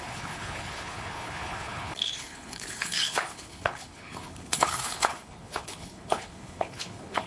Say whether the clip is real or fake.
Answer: fake